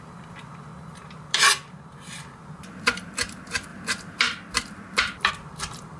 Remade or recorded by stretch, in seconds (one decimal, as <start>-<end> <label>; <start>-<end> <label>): 0.0-0.7 remade; 0.7-1.3 recorded; 1.3-6.0 remade